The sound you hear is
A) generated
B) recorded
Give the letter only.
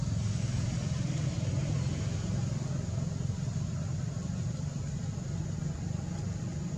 B